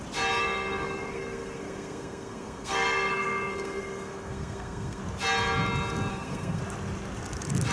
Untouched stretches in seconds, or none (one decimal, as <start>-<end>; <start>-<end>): 0.0-0.4; 5.0-6.1; 6.6-7.7